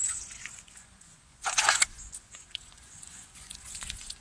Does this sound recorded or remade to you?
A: remade